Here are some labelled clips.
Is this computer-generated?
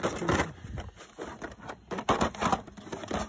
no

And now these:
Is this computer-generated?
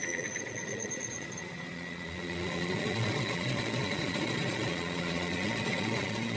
yes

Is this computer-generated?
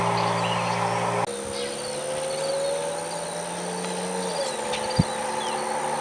no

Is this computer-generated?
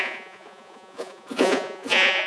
yes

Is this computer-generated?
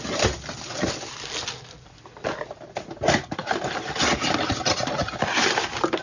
no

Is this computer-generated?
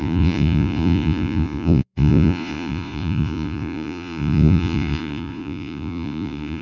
yes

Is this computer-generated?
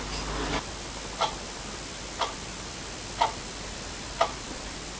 no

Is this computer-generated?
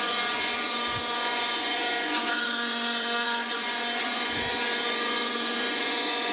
yes